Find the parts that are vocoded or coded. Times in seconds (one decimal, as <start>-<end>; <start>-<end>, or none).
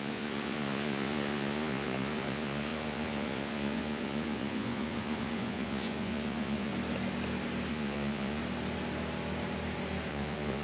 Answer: 0.0-6.7; 7.7-8.4; 10.1-10.6